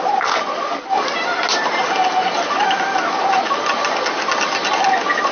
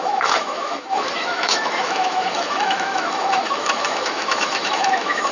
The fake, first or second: second